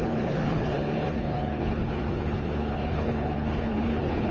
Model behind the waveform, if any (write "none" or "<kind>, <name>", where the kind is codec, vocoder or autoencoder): codec, HILCodec